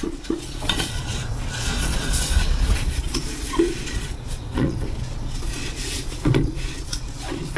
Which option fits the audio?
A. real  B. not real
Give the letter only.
B